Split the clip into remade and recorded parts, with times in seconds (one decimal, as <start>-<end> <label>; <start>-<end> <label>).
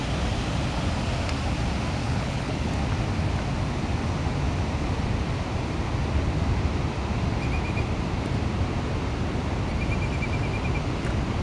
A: 0.0-2.0 recorded; 2.0-2.7 remade; 2.7-11.4 recorded